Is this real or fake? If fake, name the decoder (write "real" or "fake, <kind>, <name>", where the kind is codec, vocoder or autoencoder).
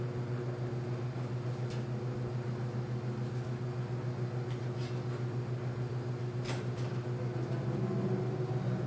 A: real